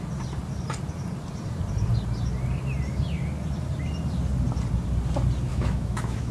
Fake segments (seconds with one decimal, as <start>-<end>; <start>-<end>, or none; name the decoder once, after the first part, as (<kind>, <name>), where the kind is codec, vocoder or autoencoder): 5.5-6.3 (autoencoder, DAC-VAE)